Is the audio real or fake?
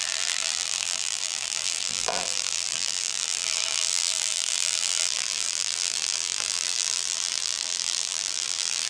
fake